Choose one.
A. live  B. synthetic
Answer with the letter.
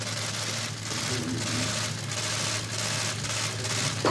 A